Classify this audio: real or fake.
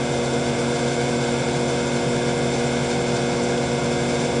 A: real